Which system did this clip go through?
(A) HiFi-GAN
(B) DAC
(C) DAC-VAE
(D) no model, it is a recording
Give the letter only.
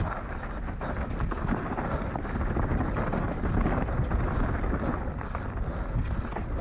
D